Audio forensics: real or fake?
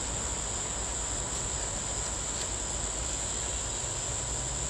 real